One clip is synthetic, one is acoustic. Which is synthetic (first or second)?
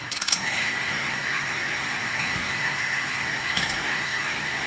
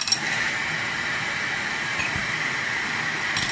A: first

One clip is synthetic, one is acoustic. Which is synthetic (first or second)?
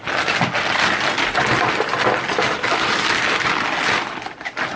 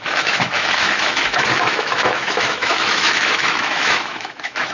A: second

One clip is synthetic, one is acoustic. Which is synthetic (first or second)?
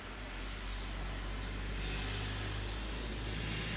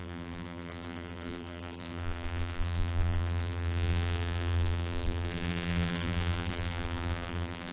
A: second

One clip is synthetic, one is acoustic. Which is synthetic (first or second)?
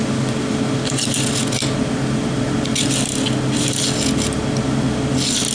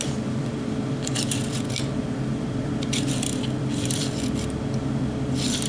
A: second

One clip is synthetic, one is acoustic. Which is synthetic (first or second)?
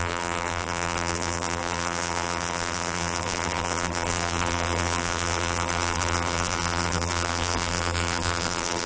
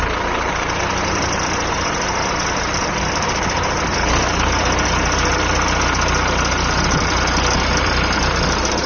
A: first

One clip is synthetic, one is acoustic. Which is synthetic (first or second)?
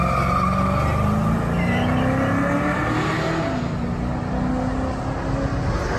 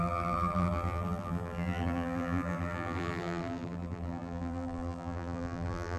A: second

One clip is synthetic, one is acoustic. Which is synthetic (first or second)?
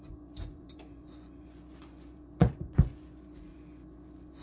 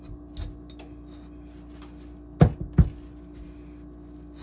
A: first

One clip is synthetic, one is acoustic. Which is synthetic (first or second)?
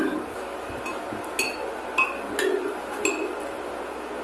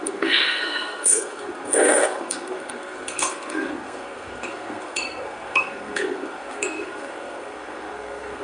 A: second